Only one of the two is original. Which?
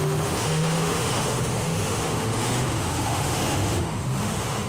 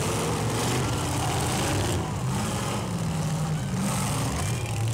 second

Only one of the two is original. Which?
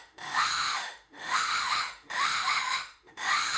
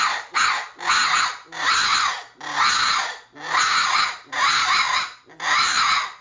second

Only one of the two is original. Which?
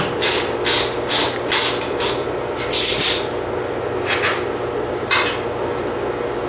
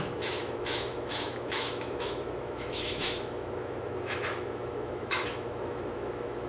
first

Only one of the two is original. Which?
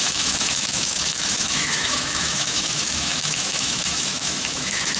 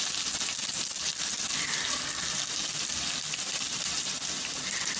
second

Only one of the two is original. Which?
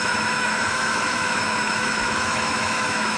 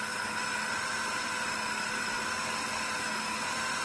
second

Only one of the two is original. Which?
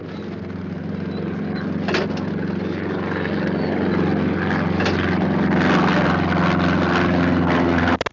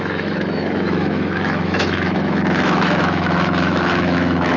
first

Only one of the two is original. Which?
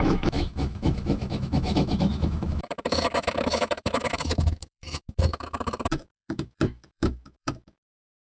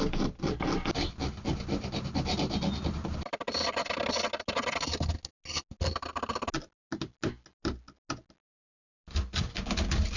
second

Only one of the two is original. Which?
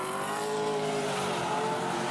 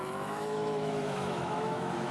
first